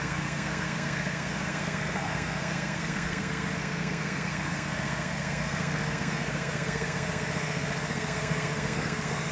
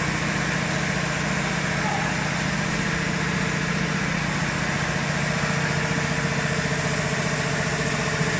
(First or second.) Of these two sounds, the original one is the second